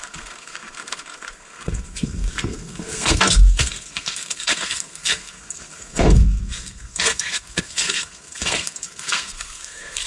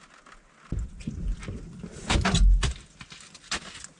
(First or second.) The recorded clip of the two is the second